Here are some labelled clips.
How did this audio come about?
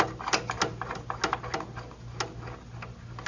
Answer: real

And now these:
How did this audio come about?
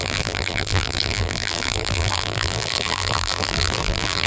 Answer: fake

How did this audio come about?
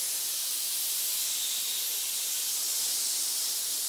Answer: real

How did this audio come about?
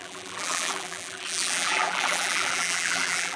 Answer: fake